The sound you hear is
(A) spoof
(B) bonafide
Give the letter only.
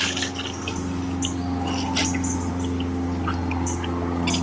B